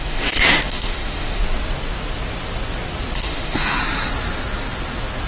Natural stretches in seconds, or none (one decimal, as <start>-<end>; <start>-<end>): 1.4-3.2; 3.8-5.3